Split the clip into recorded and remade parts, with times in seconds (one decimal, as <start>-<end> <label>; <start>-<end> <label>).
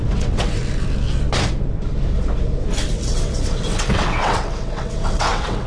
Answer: 0.0-0.6 remade; 0.6-2.9 recorded; 2.9-5.7 remade